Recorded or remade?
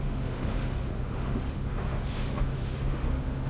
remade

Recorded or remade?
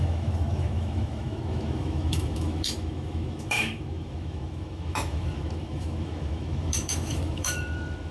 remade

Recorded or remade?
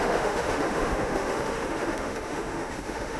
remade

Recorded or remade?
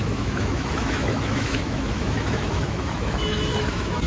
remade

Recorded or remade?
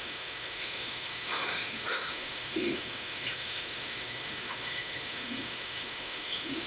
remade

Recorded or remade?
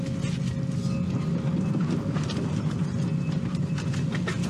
recorded